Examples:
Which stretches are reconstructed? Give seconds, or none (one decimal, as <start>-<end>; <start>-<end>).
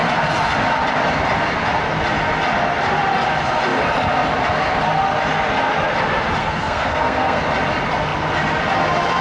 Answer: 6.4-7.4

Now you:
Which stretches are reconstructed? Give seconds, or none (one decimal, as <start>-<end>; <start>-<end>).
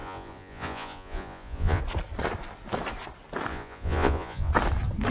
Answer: 0.0-1.8; 3.5-4.5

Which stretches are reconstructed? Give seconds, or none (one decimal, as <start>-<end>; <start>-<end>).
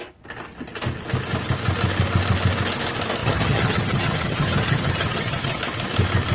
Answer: 3.2-5.6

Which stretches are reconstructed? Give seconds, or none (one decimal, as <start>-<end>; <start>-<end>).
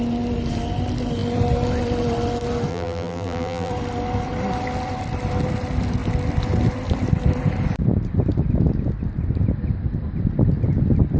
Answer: 2.7-3.7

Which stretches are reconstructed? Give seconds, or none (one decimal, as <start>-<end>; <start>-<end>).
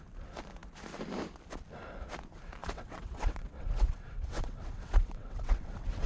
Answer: 2.6-6.1